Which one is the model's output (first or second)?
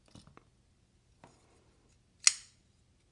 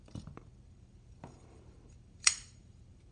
second